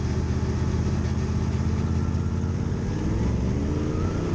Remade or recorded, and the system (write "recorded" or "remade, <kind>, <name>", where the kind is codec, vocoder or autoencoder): recorded